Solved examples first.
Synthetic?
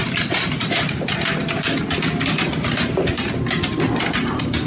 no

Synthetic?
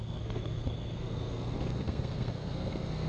yes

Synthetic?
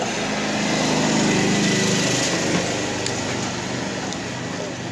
no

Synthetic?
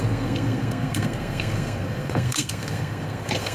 yes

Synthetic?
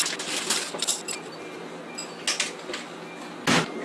no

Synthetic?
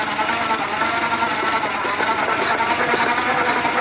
no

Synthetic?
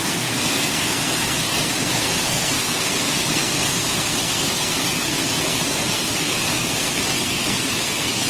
yes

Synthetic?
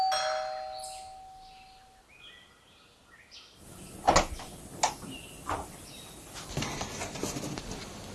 no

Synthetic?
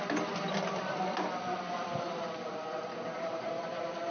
no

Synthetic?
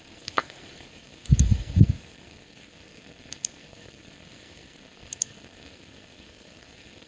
yes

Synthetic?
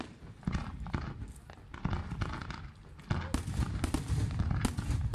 no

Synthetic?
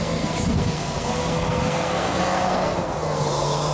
yes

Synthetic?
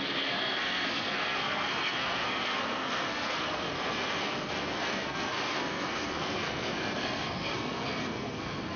yes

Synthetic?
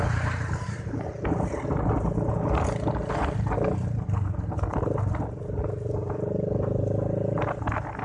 no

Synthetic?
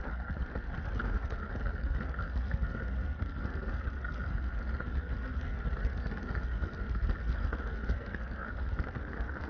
yes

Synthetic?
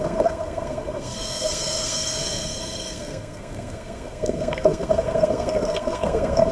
yes